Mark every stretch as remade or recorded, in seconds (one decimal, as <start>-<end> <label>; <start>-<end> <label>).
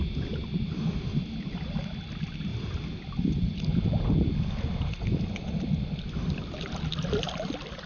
0.0-7.9 recorded